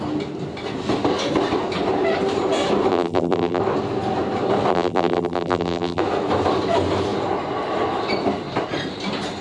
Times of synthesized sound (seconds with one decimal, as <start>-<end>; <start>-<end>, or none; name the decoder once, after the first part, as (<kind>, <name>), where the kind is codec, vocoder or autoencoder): 2.9-3.6 (vocoder, BigVGAN v2); 4.7-6.0